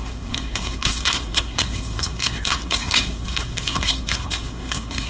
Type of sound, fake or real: fake